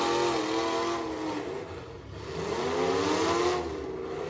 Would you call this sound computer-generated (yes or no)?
no